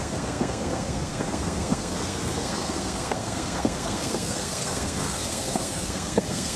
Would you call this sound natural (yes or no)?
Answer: no